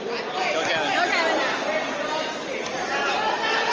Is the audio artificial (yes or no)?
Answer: no